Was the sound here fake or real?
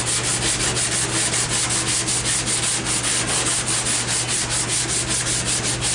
real